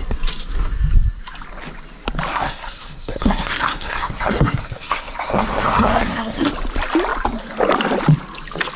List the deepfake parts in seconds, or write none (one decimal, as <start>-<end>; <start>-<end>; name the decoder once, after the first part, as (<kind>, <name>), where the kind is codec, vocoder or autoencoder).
2.3-6.5 (codec, SNAC)